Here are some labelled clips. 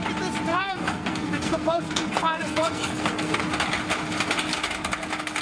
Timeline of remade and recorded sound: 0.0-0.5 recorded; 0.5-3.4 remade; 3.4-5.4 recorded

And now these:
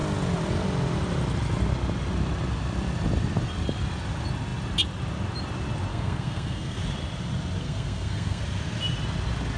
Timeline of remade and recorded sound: 0.0-5.9 recorded; 5.9-6.8 remade; 6.8-7.6 recorded; 7.6-8.4 remade; 8.4-9.6 recorded

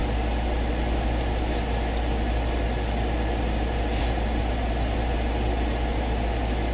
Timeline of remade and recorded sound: 0.0-6.7 recorded

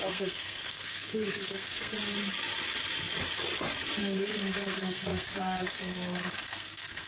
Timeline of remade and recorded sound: 0.0-1.9 remade; 1.9-4.0 recorded; 4.0-7.1 remade

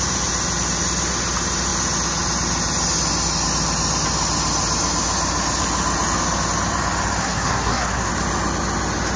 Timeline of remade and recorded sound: 0.0-7.2 recorded; 7.2-8.1 remade; 8.1-9.2 recorded

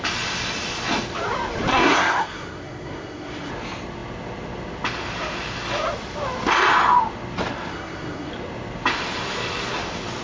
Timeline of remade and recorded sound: 0.0-1.7 recorded; 1.7-3.5 remade; 3.5-7.7 recorded; 7.7-8.3 remade; 8.3-10.2 recorded

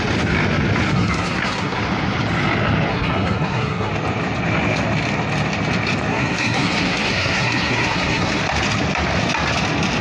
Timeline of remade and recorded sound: 0.0-0.9 recorded; 0.9-1.8 remade; 1.8-2.9 recorded; 2.9-3.9 remade; 3.9-6.1 recorded; 6.1-8.4 remade; 8.4-10.0 recorded